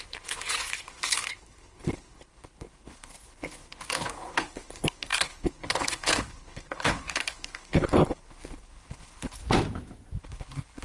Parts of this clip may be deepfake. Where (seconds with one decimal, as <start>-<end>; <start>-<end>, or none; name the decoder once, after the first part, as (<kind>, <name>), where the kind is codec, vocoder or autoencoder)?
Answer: 0.0-9.4 (codec, HILCodec); 10.2-10.8